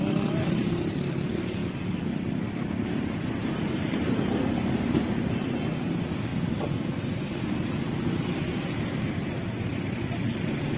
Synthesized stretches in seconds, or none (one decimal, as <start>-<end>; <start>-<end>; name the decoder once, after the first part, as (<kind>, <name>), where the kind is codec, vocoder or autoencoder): 0.0-1.6 (vocoder, BigVGAN v2); 3.4-6.3; 7.0-10.8